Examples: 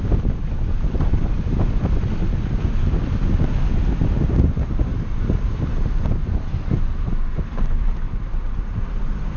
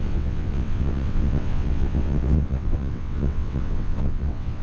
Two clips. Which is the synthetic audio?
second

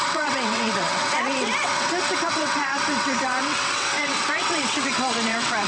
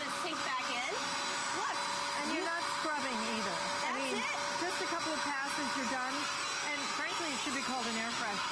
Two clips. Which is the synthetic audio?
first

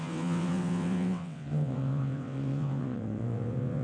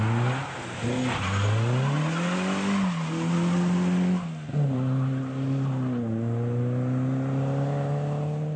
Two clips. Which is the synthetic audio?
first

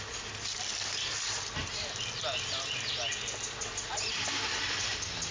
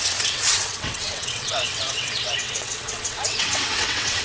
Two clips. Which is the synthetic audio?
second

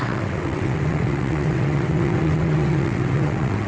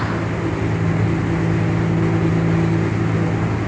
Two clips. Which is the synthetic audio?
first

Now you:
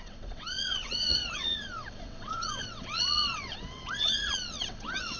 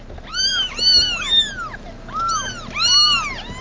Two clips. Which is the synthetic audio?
first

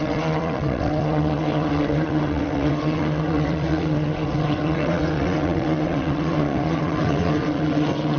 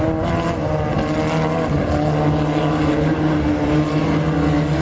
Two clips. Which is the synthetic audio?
first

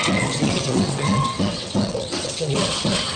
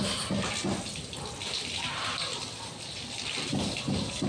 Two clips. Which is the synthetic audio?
first